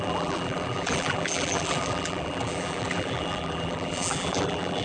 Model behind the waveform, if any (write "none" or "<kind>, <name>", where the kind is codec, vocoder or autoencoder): vocoder, BigVGAN v2